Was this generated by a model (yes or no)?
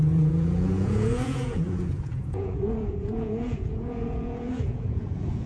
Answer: yes